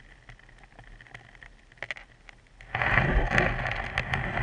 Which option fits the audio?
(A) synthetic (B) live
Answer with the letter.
B